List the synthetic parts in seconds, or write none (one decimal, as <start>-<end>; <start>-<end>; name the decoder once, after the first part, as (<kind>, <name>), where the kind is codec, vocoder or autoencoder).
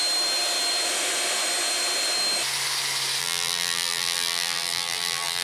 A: 3.2-5.4 (vocoder, BigVGAN v2)